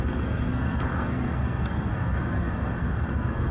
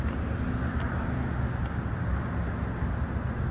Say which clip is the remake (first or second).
first